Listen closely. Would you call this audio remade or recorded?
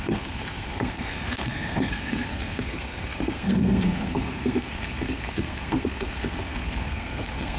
remade